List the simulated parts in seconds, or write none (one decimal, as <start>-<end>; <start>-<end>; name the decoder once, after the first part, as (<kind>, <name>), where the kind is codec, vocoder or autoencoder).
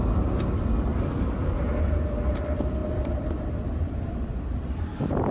none